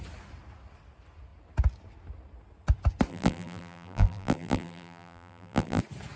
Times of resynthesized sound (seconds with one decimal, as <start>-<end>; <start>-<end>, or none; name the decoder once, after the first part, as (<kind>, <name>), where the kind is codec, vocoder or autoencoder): 3.1-5.8 (vocoder, BigVGAN v2)